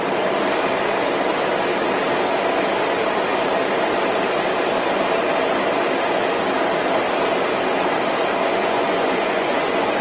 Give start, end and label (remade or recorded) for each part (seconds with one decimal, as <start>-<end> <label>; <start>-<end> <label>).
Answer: 0.0-8.4 recorded; 8.4-10.0 remade